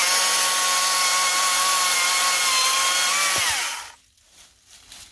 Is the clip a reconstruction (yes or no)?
no